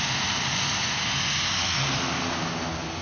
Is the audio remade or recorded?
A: recorded